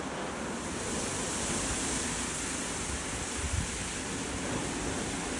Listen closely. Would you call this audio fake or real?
real